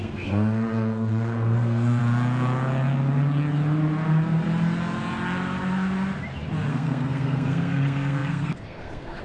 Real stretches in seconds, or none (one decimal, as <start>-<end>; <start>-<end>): 2.0-6.7